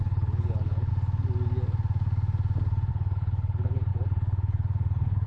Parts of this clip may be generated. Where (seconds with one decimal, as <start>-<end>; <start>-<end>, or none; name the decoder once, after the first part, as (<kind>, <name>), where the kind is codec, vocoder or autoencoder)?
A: 0.0-0.9 (codec, HILCodec); 2.9-5.3